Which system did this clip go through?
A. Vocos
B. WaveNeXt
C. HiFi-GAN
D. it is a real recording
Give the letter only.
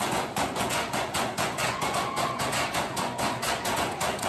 A